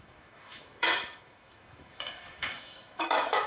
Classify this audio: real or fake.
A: fake